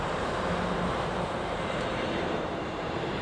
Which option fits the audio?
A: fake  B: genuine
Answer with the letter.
A